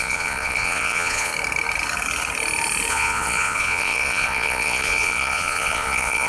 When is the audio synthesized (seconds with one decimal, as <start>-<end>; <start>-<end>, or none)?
0.0-1.3; 2.9-6.3